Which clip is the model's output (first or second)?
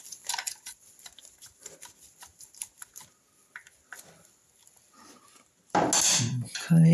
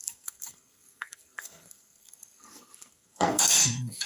second